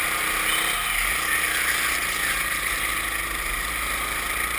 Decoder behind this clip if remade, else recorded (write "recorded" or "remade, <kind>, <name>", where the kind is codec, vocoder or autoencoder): recorded